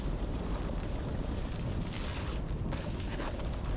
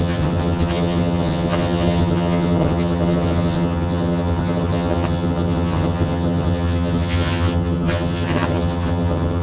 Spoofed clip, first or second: second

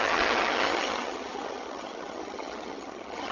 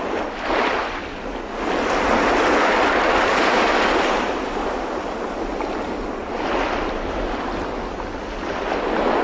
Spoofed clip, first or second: first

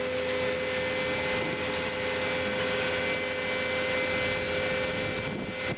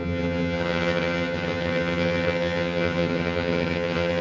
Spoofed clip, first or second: second